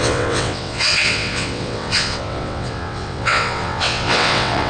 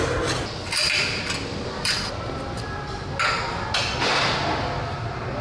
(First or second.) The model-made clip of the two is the first